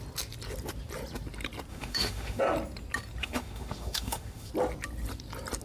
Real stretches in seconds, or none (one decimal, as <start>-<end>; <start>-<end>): 0.0-1.7; 2.4-3.2; 4.5-5.6